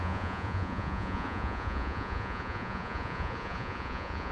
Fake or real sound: fake